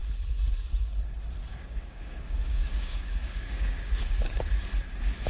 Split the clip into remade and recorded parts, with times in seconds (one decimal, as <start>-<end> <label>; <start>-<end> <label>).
0.0-1.5 recorded; 1.5-4.4 remade; 4.4-5.3 recorded